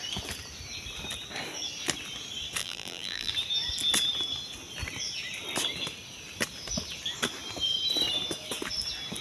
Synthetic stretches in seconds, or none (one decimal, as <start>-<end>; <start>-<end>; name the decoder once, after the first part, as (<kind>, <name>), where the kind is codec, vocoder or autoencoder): 2.6-3.3 (vocoder, BigVGAN v2)

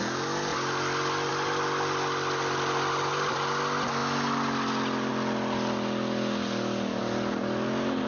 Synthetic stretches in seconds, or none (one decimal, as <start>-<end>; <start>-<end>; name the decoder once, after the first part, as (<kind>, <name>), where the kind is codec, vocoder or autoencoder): none

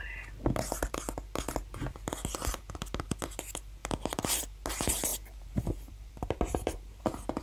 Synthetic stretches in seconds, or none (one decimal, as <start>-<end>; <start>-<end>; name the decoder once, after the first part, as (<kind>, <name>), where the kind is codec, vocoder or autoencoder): 3.8-4.4 (vocoder, BigVGAN v2); 5.1-7.0

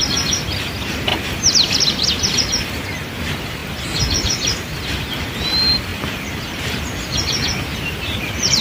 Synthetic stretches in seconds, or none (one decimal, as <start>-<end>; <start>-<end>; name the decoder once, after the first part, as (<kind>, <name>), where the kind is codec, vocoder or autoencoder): 1.1-2.7 (vocoder, BigVGAN v2); 5.9-6.8; 7.7-8.6

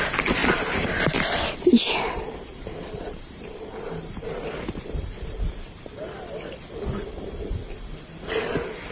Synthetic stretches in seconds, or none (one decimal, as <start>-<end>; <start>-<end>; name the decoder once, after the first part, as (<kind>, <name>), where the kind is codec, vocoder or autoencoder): 0.4-2.0 (vocoder, BigVGAN v2); 2.5-6.5